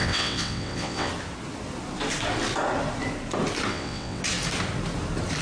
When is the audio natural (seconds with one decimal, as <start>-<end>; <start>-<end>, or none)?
1.1-3.7; 4.2-5.4